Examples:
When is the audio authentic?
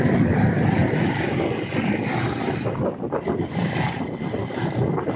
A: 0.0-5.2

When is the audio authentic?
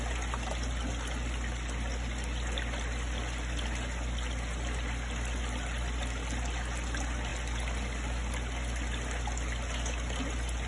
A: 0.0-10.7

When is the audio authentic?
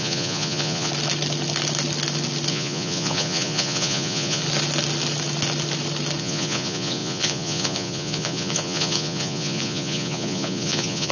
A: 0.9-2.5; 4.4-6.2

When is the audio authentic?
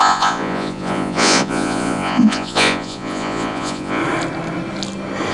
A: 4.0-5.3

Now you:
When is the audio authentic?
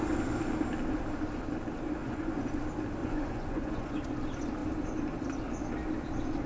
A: 0.0-2.0; 2.5-3.0; 4.0-6.5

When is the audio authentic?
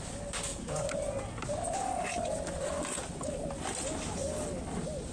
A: 0.0-5.1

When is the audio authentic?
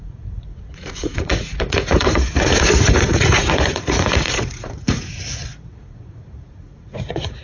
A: none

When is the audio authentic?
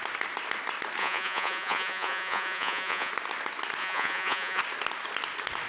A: 0.0-1.0; 3.1-3.8; 4.6-5.7